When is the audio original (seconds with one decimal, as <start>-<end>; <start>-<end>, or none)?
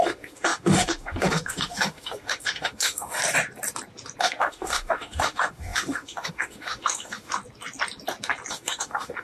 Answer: 3.2-4.2; 7.4-8.5